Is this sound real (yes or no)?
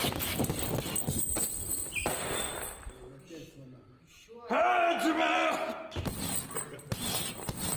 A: yes